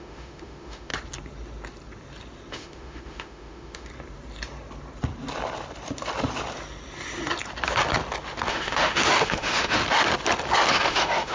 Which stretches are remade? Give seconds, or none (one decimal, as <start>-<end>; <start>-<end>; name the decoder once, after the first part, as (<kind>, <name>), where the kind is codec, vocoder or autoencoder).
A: 0.0-0.9 (autoencoder, DAC-VAE); 2.5-3.9; 8.5-9.8; 10.7-11.3